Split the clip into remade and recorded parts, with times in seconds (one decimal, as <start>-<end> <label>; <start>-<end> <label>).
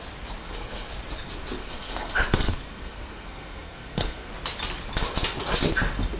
0.0-0.4 recorded; 0.4-0.9 remade; 0.9-1.6 recorded; 1.6-4.3 remade; 4.3-6.2 recorded